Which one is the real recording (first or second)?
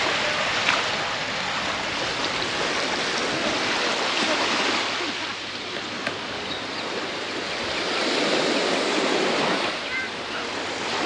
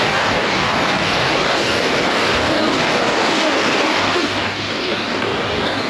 first